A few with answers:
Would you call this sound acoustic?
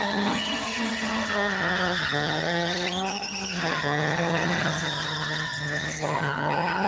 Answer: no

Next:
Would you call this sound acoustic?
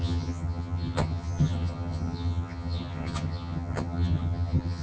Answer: no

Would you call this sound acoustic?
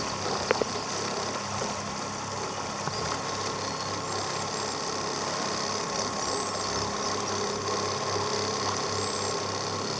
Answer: yes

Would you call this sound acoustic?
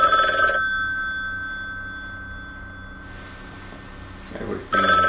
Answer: yes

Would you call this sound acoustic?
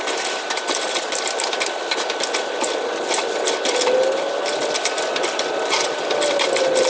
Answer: yes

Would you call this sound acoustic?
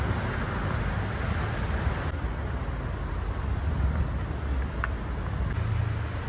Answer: yes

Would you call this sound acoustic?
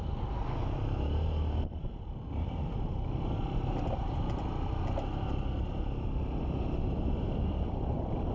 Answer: yes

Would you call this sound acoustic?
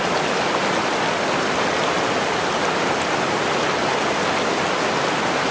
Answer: yes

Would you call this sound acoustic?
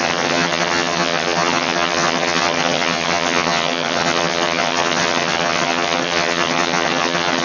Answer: no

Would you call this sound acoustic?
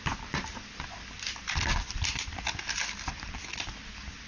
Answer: yes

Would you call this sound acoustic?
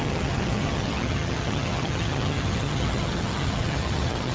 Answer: no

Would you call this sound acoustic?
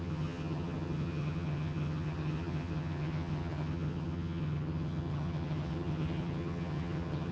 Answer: no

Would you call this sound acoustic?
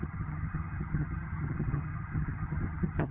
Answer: no